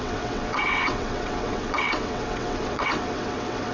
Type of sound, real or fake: fake